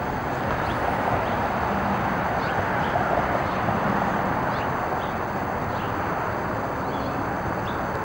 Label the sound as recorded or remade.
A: recorded